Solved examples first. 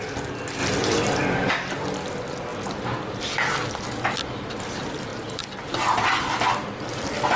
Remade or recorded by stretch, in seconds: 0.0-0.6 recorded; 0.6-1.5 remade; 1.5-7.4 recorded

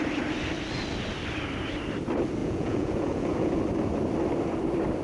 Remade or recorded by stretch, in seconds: 0.0-2.4 recorded; 2.4-3.6 remade; 3.6-5.0 recorded